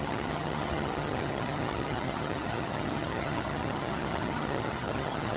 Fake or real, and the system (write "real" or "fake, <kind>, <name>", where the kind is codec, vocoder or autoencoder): fake, vocoder, HiFi-GAN